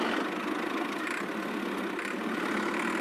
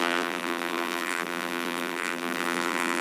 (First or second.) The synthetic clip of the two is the second